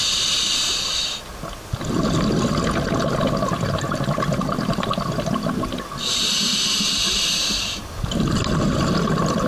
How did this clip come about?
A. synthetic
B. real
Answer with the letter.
B